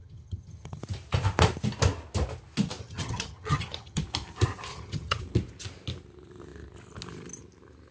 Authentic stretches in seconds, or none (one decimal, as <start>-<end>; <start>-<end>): 0.8-2.8; 4.0-4.7; 5.2-7.9

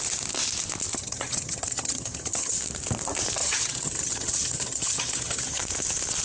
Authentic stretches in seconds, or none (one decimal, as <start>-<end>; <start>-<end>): 0.0-0.9; 2.6-3.4; 5.6-6.2

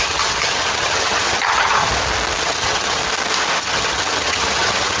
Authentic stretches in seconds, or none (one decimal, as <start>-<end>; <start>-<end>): 1.9-2.4; 3.0-3.6

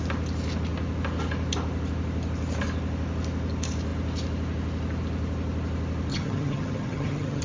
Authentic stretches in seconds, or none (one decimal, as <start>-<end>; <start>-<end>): 0.0-6.1